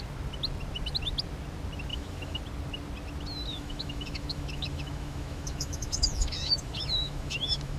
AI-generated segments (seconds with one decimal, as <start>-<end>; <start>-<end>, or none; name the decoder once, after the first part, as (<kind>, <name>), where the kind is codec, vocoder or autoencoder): 1.9-2.4 (autoencoder, DAC-VAE); 3.5-7.8